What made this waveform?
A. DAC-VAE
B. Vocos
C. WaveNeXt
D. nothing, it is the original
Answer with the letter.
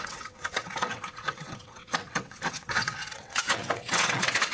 C